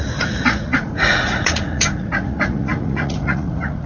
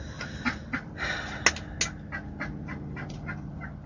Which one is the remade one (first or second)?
first